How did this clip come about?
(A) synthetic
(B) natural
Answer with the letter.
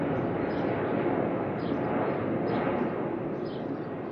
B